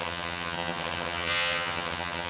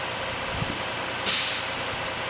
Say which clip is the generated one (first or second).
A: first